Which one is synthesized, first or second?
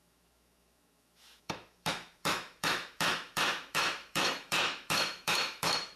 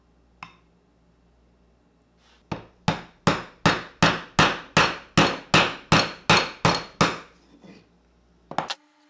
first